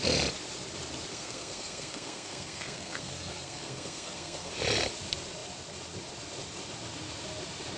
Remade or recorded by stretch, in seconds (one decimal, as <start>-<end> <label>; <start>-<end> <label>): 0.0-1.1 recorded; 1.1-4.5 remade; 4.5-7.8 recorded